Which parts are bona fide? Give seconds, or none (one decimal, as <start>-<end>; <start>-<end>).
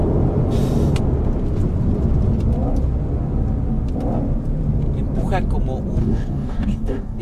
0.0-6.0